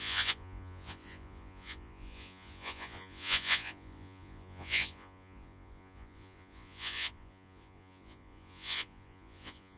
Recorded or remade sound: remade